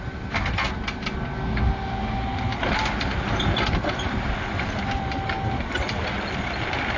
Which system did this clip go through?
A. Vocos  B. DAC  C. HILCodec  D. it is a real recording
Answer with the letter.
D